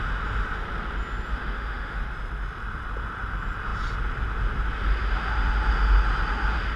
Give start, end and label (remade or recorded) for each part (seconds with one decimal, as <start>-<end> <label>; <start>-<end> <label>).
0.0-1.3 recorded; 1.3-2.0 remade; 2.0-6.8 recorded